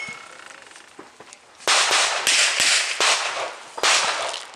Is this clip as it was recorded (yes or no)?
yes